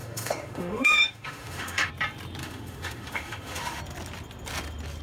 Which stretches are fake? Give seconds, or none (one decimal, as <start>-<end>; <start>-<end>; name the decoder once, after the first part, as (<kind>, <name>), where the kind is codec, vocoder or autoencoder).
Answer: 0.0-1.9 (autoencoder, DAC-VAE); 2.4-3.8